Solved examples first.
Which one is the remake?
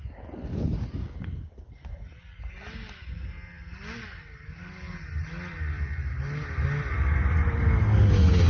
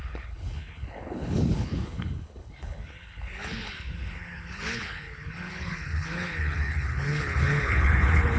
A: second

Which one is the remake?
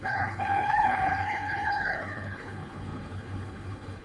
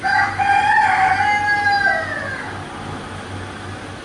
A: first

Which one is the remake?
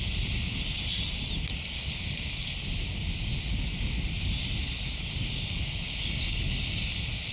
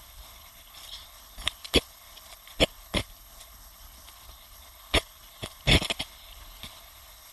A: second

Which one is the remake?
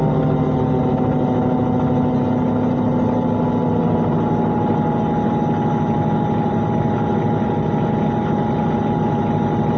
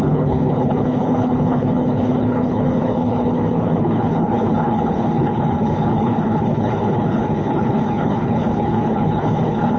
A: second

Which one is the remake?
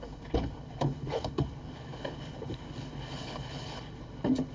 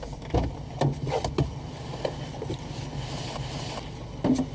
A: first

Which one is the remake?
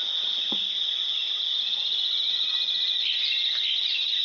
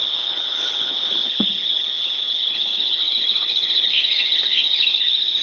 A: second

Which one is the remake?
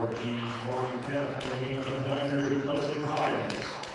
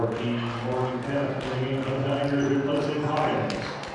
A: first